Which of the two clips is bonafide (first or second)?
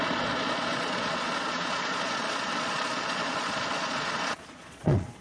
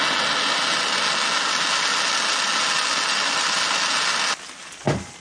second